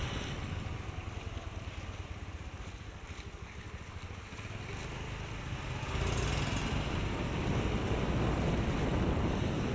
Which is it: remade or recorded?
recorded